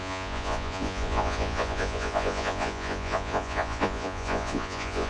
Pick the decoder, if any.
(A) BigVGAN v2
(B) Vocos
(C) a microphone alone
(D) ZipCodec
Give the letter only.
B